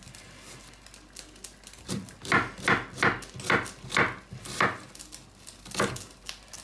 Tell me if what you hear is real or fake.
real